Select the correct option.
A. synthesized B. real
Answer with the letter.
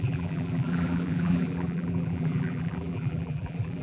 A